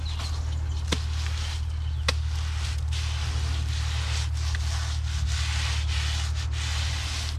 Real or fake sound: real